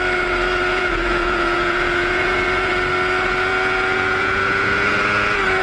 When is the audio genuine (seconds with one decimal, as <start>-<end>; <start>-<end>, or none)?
0.0-0.7; 2.7-3.5; 4.9-5.6